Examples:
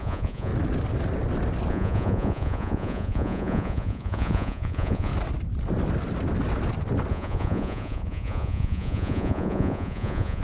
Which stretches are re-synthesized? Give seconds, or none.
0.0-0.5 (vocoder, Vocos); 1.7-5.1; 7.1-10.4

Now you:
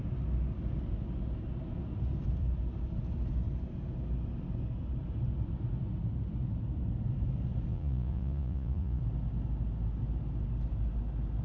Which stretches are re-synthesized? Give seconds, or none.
7.7-9.0 (vocoder, Vocos)

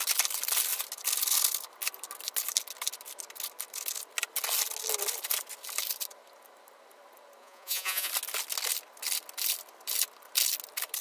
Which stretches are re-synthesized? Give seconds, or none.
7.4-8.1 (vocoder, Vocos)

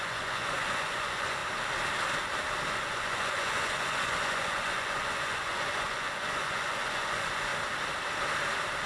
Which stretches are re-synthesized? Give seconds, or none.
0.0-1.4 (vocoder, Vocos); 2.7-7.5

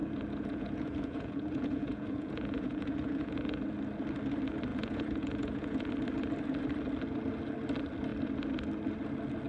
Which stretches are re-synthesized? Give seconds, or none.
0.0-3.6 (vocoder, Vocos); 4.7-5.9

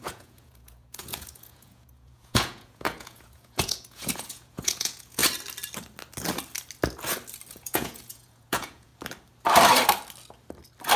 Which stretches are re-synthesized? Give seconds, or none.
0.0-5.2 (vocoder, Vocos); 7.5-8.9

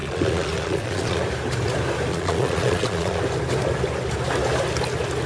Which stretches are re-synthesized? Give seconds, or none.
0.0-1.2 (vocoder, Vocos); 2.1-3.2